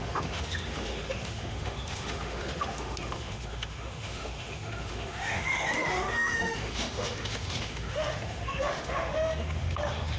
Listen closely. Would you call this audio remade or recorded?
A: remade